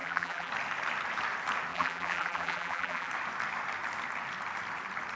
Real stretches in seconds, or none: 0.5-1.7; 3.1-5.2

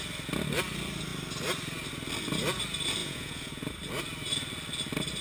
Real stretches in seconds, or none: 0.0-3.0; 3.7-5.2

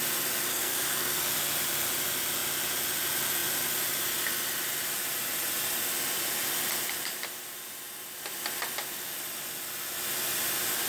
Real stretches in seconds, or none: 0.0-0.5; 1.3-10.9

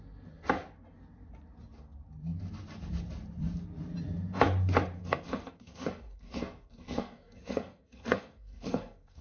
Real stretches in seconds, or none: 0.0-5.0

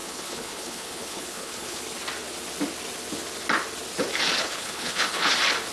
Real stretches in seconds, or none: 1.8-4.4; 5.3-5.7